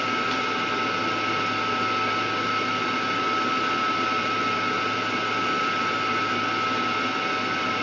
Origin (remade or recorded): recorded